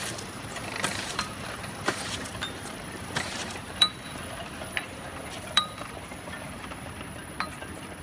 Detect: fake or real fake